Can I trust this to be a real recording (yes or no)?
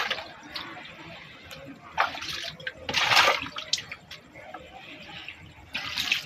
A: yes